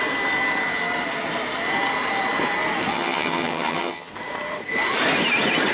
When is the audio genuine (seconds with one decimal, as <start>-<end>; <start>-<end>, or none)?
0.0-2.9; 4.1-5.7